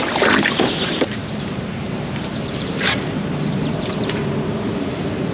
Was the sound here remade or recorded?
remade